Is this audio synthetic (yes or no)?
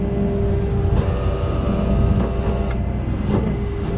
no